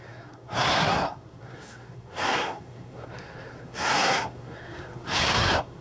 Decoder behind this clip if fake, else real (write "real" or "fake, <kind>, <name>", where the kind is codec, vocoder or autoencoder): fake, codec, SNAC